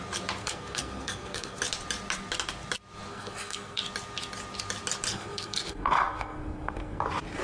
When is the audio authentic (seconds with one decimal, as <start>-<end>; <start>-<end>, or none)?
0.0-0.4; 1.6-3.1; 3.8-5.1; 7.0-7.4